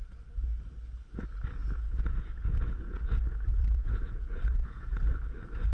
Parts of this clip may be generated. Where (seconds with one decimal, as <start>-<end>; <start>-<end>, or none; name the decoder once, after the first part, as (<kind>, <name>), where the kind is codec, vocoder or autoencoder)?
1.6-5.0 (vocoder, Vocos)